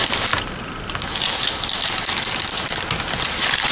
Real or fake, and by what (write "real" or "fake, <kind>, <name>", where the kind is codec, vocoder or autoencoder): real